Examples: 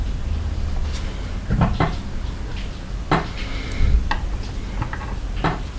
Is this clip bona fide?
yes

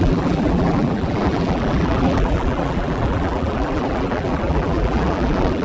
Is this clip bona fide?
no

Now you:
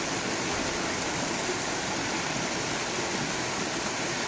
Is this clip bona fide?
yes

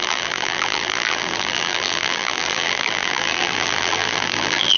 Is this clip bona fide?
no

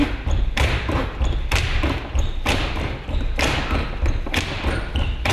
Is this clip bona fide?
yes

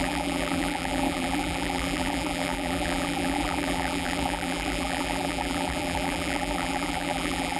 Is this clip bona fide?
no